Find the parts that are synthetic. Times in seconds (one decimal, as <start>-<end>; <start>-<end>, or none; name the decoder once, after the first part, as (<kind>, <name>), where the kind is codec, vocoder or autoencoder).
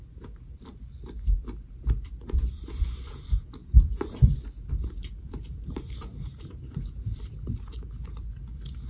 0.0-8.9 (vocoder, BigVGAN v2)